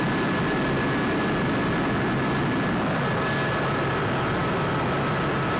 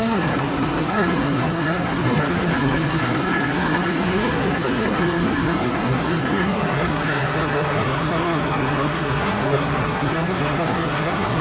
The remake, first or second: second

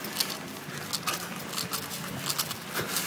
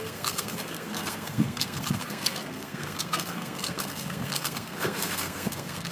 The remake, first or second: second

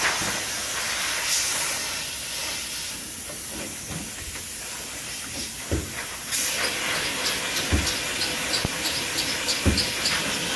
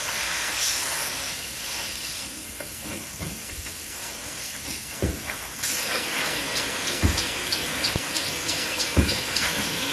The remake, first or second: second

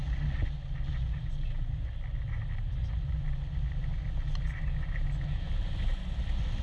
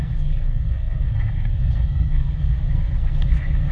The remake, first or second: second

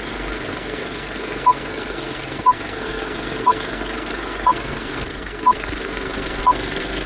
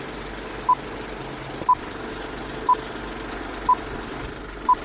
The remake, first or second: first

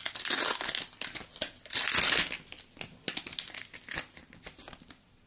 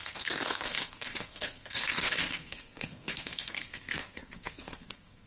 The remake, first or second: second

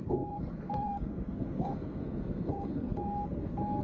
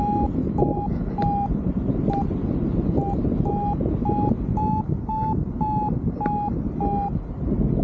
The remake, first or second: first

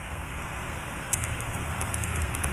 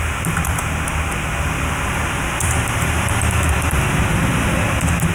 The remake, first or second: first